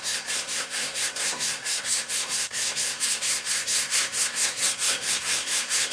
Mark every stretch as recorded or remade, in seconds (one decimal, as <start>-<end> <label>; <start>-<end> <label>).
0.0-5.9 remade